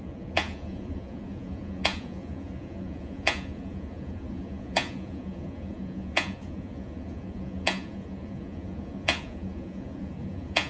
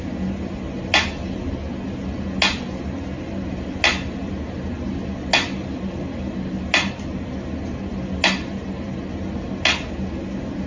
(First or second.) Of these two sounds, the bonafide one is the second